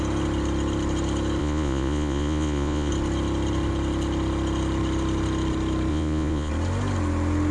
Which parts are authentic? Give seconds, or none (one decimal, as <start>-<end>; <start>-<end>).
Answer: 0.0-1.4; 2.9-5.9; 6.5-7.5